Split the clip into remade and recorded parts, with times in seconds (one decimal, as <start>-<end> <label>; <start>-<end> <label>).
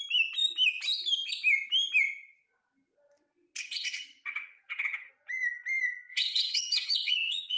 0.0-3.6 recorded; 3.6-5.1 remade; 5.1-6.1 recorded; 6.1-7.6 remade